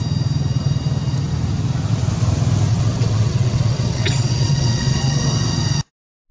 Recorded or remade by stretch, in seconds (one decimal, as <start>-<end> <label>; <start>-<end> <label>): 0.0-2.7 recorded; 2.7-5.2 remade; 5.2-6.3 recorded